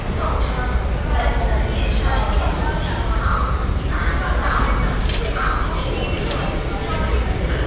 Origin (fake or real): fake